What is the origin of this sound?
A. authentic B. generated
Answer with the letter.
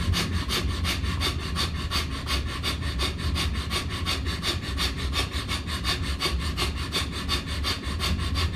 A